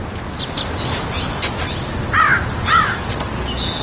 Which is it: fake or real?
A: real